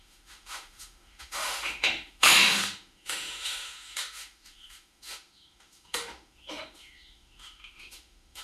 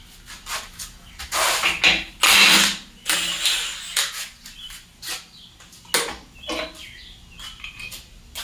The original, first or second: second